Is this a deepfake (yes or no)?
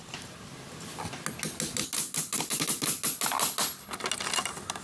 no